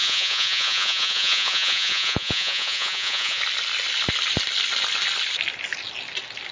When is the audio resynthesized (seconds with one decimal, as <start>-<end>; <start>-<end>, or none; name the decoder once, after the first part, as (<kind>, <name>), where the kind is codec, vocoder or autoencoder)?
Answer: 0.0-3.4 (vocoder, Vocos)